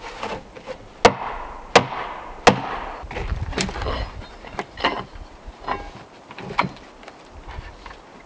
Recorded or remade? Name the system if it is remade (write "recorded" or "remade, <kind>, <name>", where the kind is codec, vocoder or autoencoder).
recorded